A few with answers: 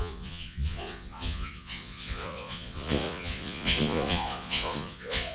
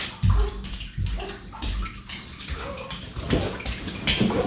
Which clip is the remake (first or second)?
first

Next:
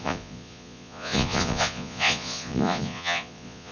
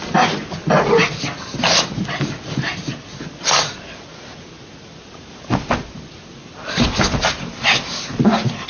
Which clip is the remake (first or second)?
first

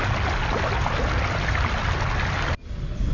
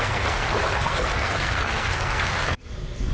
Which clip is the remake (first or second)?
second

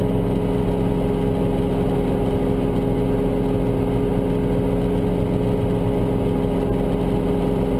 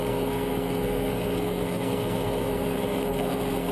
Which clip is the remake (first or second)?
second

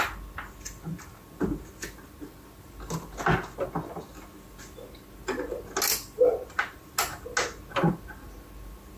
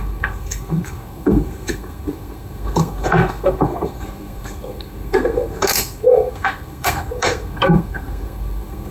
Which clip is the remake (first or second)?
second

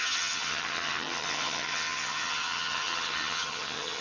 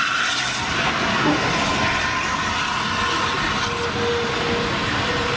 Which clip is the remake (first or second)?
first